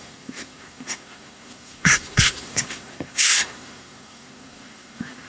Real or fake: fake